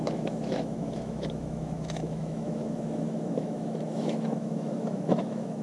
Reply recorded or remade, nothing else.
remade